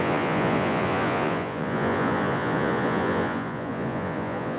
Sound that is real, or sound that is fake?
fake